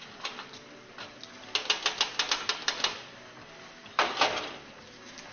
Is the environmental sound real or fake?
real